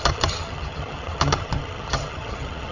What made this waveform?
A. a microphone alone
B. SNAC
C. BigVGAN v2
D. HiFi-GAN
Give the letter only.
D